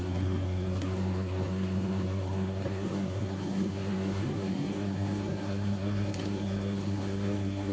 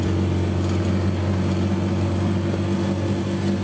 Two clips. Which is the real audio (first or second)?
second